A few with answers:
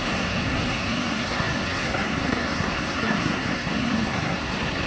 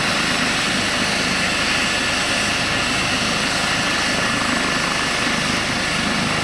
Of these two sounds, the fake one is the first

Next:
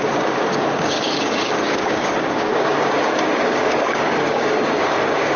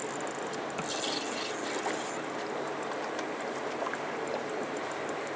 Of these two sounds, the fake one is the first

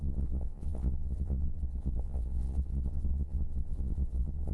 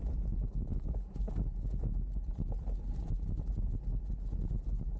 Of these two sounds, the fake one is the first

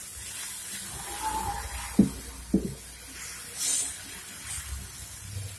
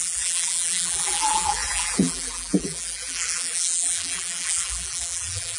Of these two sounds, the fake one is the second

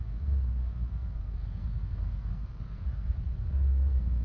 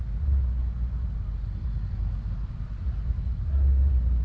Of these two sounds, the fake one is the first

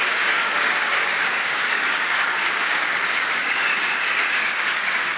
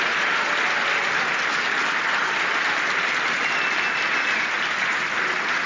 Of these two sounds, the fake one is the first